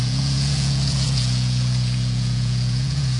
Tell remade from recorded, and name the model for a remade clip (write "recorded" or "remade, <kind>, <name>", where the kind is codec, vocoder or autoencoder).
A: remade, vocoder, Vocos